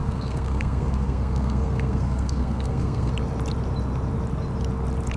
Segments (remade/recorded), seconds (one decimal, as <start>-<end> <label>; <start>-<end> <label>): 0.0-3.1 remade; 3.1-5.2 recorded